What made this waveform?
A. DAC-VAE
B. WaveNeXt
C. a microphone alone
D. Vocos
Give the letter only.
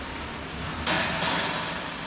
C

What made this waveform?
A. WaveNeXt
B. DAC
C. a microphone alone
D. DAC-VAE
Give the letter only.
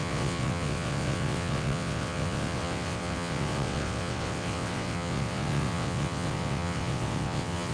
A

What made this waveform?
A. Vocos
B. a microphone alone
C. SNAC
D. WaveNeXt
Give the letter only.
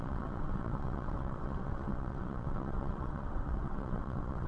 D